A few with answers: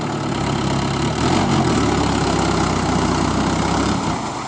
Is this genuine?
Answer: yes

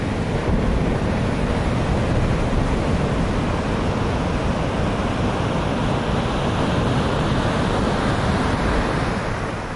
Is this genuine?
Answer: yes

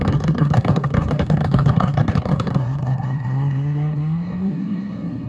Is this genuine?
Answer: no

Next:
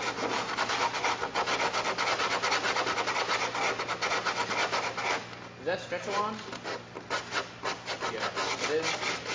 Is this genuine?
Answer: yes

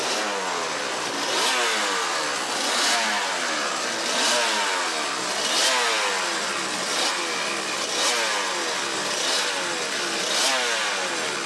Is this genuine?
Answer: yes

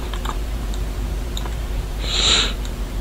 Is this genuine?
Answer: no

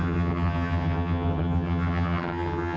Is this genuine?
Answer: no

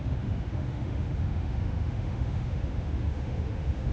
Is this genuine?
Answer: no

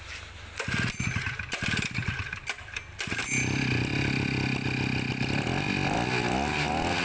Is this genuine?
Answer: yes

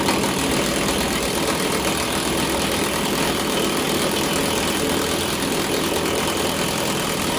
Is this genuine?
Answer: yes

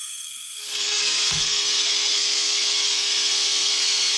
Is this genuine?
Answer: no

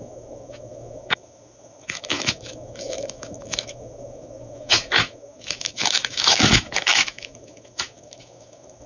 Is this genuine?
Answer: no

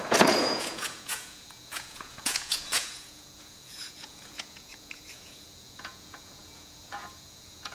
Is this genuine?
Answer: no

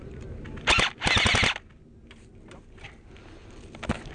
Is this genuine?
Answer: yes